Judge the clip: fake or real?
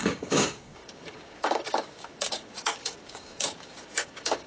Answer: fake